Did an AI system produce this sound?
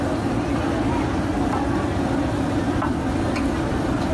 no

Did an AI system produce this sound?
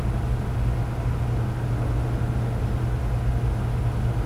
no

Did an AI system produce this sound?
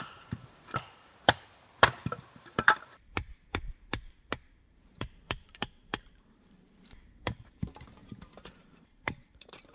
yes